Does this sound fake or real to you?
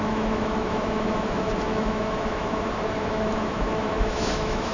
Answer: fake